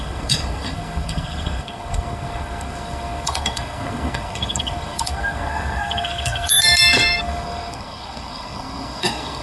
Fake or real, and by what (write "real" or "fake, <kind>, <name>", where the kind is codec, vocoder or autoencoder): fake, codec, SNAC